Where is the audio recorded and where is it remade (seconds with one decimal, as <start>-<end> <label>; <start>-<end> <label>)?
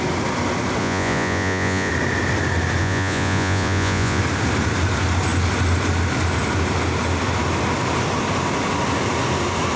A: 0.0-0.8 recorded; 0.8-1.9 remade; 1.9-2.8 recorded; 2.8-4.2 remade; 4.2-9.8 recorded